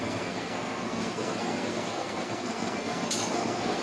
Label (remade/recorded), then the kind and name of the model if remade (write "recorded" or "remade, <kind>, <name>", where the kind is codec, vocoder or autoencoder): remade, codec, SNAC